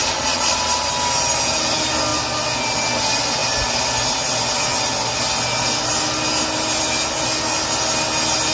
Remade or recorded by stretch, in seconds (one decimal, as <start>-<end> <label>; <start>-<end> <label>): 0.0-0.6 remade; 0.6-8.5 recorded